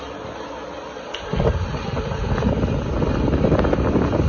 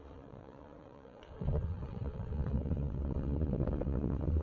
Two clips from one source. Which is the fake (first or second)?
second